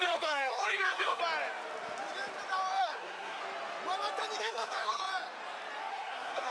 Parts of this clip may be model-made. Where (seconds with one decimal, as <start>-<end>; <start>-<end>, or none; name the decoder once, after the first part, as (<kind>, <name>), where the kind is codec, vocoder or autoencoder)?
0.0-1.2 (codec, SNAC); 2.8-3.4; 4.4-5.0; 5.9-6.5